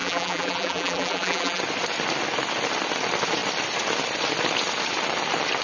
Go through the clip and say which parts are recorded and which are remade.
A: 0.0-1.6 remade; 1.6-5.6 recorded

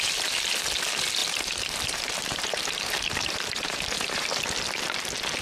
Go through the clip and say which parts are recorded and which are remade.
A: 0.0-1.2 recorded; 1.2-4.4 remade; 4.4-5.4 recorded